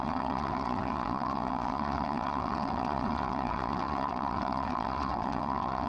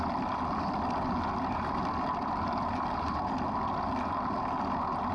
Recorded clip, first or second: second